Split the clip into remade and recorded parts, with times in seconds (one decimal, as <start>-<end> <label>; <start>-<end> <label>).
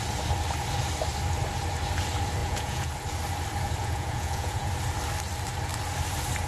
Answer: 0.0-2.4 recorded; 2.4-2.9 remade; 2.9-3.8 recorded; 3.8-4.7 remade; 4.7-6.5 recorded